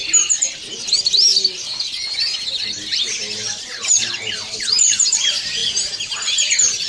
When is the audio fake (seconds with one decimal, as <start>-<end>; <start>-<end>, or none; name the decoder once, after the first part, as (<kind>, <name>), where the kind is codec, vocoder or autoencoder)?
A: none

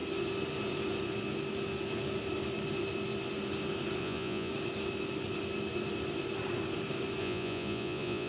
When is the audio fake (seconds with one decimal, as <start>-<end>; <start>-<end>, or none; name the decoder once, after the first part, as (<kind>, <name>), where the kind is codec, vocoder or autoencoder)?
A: 4.0-4.5 (vocoder, Vocos); 7.2-8.3

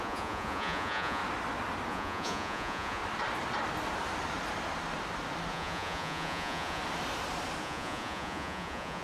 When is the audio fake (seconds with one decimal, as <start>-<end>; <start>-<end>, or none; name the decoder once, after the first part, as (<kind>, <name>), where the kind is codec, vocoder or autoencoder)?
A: 0.0-1.2 (vocoder, Vocos); 1.9-3.0; 5.5-6.8; 7.6-9.0

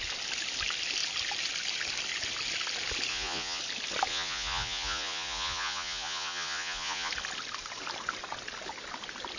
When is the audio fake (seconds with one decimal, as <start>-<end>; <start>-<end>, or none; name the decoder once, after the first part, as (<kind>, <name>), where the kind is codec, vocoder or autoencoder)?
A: 3.1-3.6 (vocoder, Vocos); 4.1-7.1

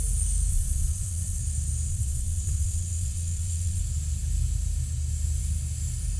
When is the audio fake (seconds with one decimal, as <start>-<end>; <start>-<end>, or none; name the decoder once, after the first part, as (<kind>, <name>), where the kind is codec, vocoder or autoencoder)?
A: 0.5-1.4 (vocoder, Vocos); 1.9-3.8

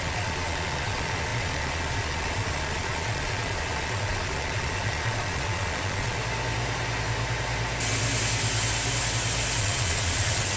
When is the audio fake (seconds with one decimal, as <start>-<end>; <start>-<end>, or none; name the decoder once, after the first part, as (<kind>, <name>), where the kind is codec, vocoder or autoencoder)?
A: 0.0-6.2 (vocoder, Vocos); 9.6-10.6

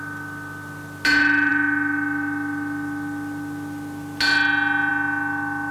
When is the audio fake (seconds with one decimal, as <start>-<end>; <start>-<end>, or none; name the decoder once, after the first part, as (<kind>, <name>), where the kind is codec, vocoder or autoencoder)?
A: none

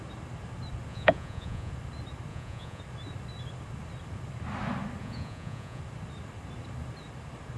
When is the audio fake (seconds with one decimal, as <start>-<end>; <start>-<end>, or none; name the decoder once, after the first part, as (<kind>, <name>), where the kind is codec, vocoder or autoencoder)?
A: 0.9-1.7 (vocoder, Vocos); 2.3-2.8; 5.0-5.8